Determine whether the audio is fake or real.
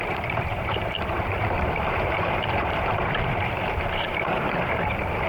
fake